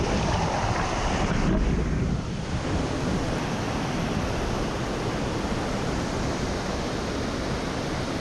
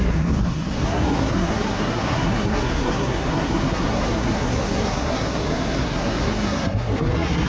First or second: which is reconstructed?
second